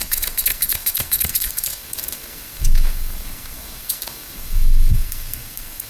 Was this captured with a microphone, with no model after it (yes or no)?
no